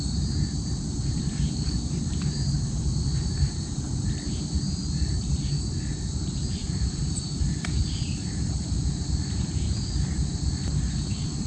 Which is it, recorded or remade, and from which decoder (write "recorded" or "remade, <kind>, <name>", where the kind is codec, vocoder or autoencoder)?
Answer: remade, vocoder, BigVGAN v2